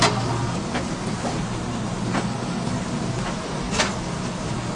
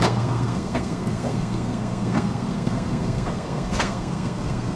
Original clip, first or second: first